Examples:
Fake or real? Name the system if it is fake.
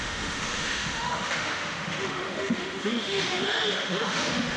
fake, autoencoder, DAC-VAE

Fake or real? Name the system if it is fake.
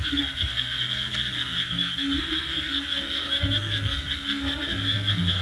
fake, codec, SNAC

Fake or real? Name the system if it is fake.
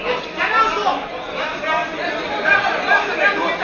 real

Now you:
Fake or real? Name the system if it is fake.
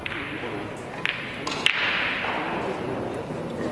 real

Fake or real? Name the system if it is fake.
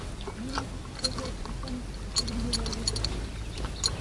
real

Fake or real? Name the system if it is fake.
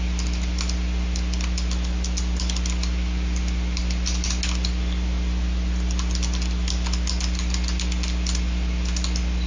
real